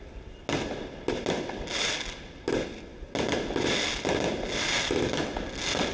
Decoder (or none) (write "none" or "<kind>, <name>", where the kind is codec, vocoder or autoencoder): none